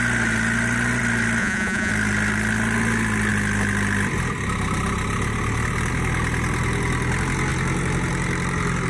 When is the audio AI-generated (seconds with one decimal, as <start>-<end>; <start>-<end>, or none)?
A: 1.4-1.9